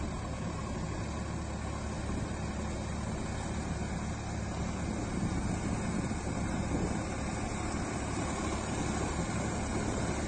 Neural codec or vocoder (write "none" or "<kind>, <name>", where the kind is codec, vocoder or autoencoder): none